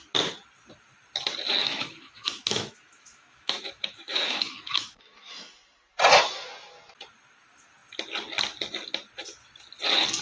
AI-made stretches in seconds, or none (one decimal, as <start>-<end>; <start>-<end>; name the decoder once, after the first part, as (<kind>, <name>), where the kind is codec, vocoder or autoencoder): 1.6-5.5 (autoencoder, DAC-VAE)